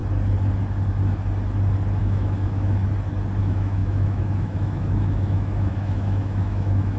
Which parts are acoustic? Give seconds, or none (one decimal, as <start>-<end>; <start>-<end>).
0.0-2.0; 2.8-3.4